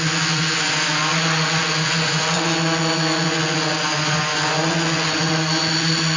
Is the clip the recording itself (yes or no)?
no